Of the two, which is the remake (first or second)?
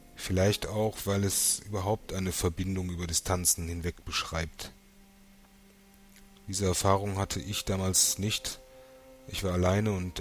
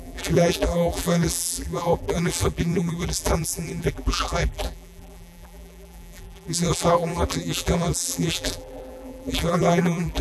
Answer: second